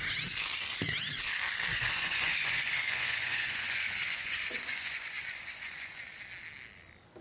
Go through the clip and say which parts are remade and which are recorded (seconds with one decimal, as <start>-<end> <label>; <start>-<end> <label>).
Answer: 0.0-1.7 recorded; 1.7-6.0 remade; 6.0-7.2 recorded